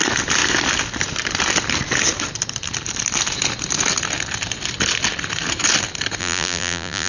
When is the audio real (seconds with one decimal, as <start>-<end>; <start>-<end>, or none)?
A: 0.0-6.2